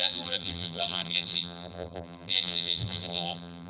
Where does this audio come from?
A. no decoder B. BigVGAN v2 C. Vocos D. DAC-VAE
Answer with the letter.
B